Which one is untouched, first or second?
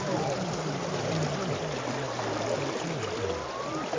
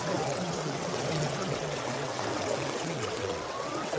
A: first